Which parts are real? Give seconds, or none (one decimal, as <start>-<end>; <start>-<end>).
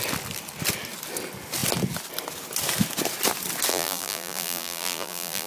0.0-3.7